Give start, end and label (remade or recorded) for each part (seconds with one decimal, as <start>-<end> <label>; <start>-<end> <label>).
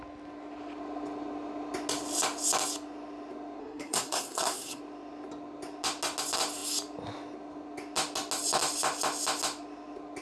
0.0-3.6 recorded; 3.6-4.8 remade; 4.8-10.2 recorded